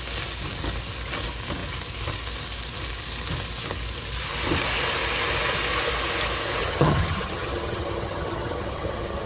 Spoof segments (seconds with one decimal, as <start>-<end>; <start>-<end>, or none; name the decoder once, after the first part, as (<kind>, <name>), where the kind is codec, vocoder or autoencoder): 6.6-9.3 (vocoder, HiFi-GAN)